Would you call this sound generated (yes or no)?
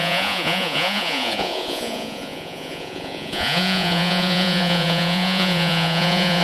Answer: yes